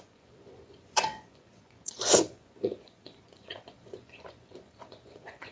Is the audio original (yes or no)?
no